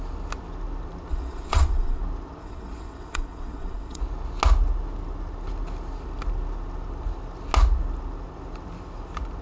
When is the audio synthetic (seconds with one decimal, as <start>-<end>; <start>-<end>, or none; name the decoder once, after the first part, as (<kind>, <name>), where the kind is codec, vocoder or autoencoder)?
1.1-2.0 (vocoder, WaveNeXt); 2.4-4.0